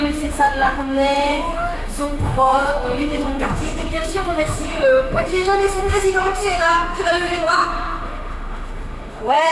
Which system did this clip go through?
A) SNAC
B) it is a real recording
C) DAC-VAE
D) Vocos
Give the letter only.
C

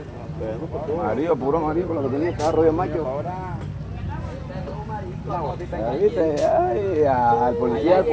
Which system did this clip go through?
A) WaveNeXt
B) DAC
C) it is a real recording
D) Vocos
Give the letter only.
C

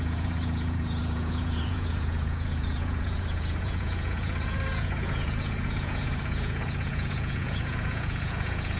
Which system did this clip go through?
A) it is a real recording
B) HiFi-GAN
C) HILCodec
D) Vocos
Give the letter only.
D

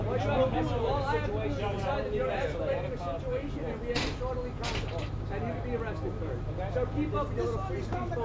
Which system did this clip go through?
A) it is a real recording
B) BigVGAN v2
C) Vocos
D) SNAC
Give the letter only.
A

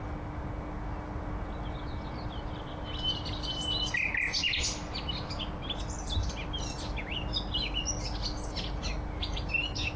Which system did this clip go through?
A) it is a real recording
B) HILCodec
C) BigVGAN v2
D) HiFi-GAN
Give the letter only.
A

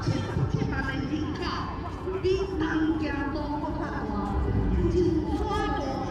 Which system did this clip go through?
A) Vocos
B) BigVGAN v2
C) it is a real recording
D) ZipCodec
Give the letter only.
A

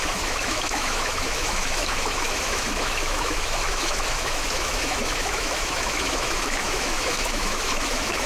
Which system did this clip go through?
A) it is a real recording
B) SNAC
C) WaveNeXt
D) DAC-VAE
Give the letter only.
D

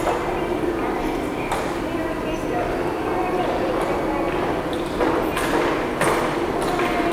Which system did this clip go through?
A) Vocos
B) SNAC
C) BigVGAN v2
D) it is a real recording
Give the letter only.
D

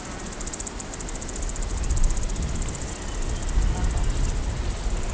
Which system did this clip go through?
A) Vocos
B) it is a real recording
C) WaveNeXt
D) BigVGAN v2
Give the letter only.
B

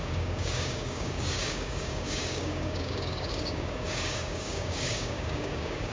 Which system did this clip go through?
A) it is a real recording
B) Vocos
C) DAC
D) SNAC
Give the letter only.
C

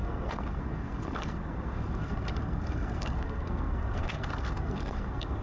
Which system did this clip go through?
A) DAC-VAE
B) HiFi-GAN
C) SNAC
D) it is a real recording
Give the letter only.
C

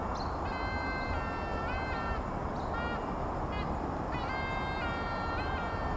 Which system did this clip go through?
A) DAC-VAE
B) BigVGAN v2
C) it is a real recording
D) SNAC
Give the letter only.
C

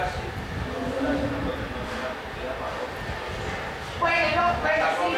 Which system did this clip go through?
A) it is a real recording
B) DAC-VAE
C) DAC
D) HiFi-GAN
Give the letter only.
A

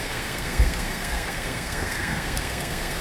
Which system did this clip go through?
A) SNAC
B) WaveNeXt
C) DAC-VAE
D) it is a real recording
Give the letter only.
A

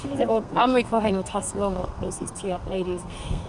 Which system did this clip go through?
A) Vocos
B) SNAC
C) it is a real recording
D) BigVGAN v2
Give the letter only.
B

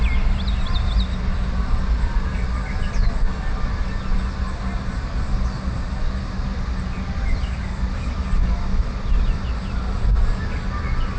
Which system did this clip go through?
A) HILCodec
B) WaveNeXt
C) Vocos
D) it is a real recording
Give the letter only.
D